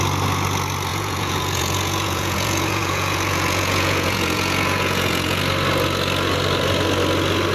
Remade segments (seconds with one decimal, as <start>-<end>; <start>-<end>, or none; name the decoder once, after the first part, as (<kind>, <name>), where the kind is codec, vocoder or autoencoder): 0.9-5.4 (vocoder, Vocos)